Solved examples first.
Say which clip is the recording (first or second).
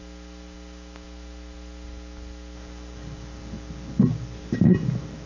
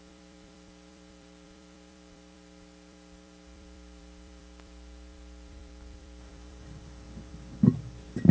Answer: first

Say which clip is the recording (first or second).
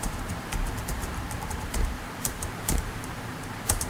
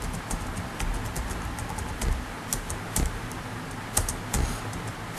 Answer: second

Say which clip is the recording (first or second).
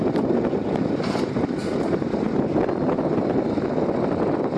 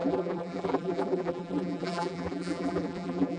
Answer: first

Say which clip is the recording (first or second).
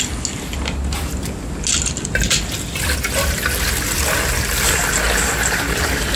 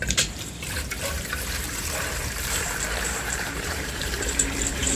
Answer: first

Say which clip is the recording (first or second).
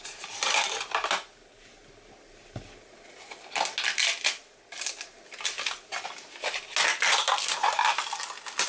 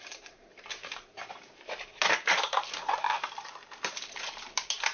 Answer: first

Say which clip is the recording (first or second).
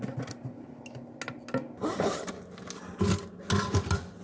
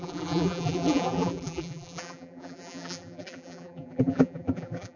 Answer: first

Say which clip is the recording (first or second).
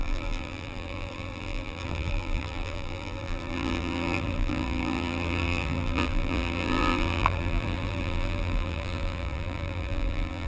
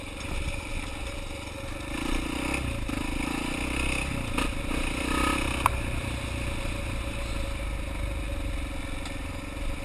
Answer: second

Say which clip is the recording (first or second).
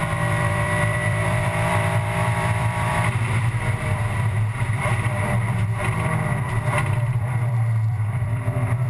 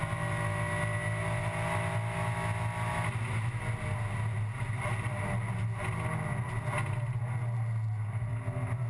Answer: second